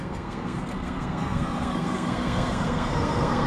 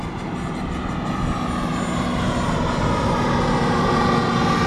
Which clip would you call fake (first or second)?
first